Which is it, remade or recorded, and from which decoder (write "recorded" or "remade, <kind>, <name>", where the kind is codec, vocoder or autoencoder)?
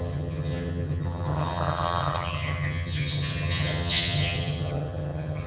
remade, vocoder, HiFi-GAN